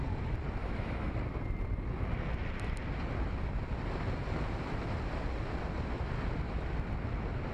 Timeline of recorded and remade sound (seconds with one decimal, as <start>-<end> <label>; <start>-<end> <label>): 0.0-0.6 recorded; 0.6-1.1 remade; 1.1-7.5 recorded